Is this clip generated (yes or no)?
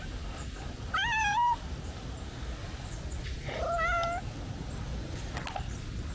no